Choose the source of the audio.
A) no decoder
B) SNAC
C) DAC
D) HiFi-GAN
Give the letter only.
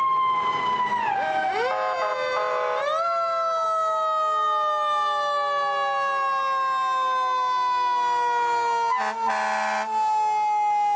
A